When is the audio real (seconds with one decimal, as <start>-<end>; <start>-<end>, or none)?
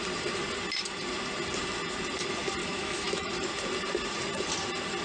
0.0-2.6; 3.3-5.0